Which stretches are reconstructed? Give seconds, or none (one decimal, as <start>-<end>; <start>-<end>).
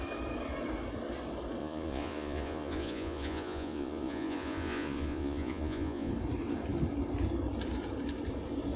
1.6-6.1